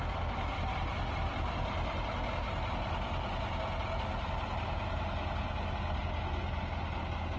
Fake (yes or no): no